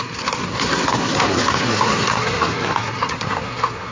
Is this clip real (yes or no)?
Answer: no